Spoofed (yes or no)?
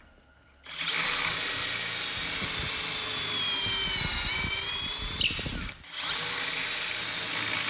no